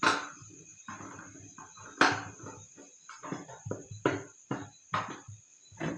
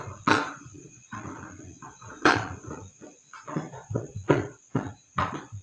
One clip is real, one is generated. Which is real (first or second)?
first